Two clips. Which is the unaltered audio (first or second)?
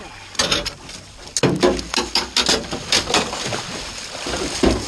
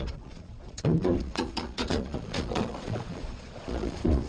first